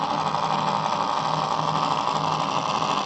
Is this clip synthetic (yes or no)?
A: no